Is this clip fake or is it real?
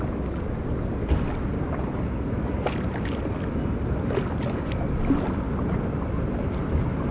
real